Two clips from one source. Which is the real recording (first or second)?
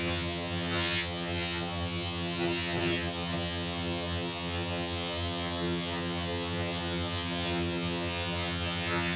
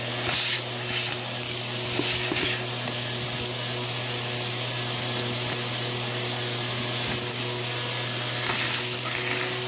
second